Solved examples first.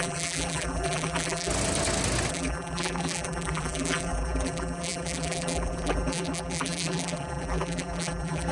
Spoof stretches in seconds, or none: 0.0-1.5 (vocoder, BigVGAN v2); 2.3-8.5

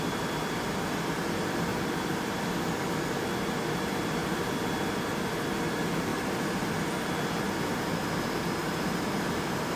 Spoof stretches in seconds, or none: 1.7-2.4 (vocoder, BigVGAN v2); 4.2-4.7; 6.1-7.1; 8.6-9.3

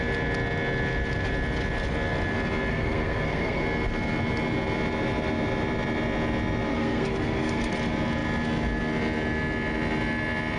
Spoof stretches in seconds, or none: 2.7-3.6 (codec, SNAC); 6.7-7.7